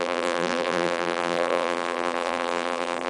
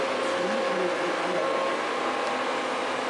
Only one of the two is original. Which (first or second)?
second